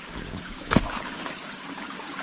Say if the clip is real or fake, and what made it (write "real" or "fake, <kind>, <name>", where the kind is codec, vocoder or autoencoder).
fake, codec, DAC